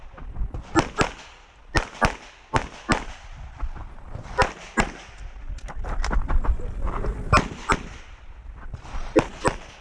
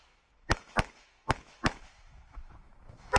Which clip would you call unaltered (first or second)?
first